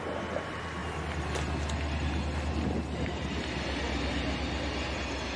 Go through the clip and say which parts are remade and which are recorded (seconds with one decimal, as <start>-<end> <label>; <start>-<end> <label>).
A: 0.0-5.4 recorded